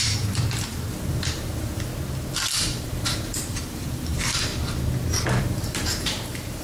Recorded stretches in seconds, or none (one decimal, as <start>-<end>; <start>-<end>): 1.9-2.6; 4.5-5.4